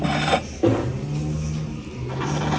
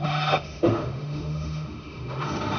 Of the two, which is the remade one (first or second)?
second